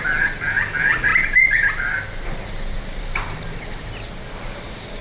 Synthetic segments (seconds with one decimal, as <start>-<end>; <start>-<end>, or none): none